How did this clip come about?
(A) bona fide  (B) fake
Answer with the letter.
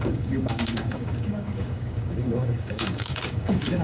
B